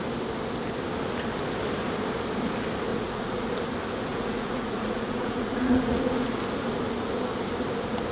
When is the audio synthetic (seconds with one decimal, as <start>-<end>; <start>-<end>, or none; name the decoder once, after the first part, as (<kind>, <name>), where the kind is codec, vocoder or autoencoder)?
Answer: 2.9-3.5 (vocoder, Vocos); 4.1-6.4